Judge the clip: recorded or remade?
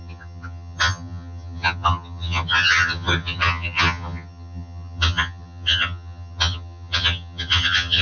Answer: remade